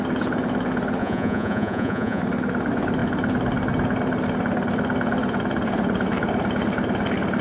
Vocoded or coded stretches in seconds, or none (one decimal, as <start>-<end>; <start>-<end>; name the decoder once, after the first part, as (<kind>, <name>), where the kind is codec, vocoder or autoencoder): 1.0-2.2 (vocoder, Vocos)